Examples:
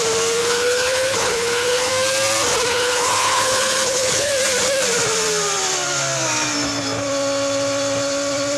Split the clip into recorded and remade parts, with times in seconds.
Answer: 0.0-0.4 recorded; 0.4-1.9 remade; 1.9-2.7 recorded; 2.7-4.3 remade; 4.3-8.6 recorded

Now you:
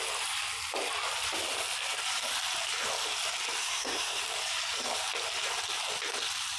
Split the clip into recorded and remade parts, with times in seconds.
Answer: 0.0-3.6 recorded; 3.6-4.2 remade; 4.2-6.6 recorded

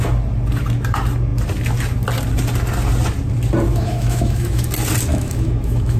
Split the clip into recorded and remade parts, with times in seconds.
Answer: 0.0-3.7 recorded; 3.7-4.6 remade; 4.6-5.1 recorded; 5.1-6.0 remade

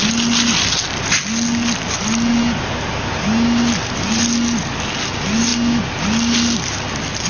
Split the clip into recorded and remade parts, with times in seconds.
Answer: 0.0-7.3 recorded

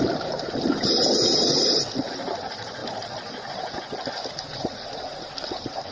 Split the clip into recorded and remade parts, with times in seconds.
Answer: 0.0-5.9 recorded

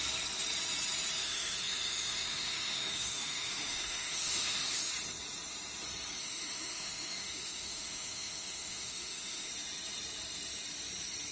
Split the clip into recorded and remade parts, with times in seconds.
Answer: 0.0-1.2 recorded; 1.2-4.9 remade; 4.9-6.2 recorded; 6.2-9.5 remade; 9.5-11.3 recorded

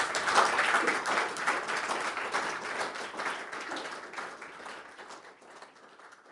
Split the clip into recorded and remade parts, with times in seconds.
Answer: 0.0-6.3 recorded